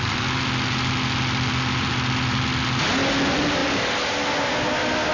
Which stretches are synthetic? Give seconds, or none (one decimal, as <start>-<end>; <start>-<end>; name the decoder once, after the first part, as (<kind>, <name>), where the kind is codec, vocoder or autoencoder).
none